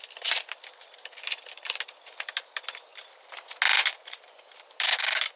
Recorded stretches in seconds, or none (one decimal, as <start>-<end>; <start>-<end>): 0.0-5.4